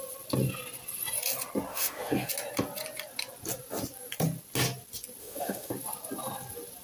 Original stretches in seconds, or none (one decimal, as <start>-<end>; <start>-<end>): 0.0-1.7; 2.3-5.2; 5.7-6.8